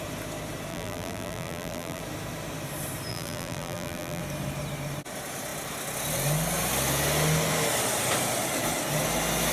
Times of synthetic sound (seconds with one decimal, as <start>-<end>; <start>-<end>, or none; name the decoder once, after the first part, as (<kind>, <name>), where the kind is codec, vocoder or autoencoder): 0.7-2.0 (vocoder, BigVGAN v2); 3.1-4.2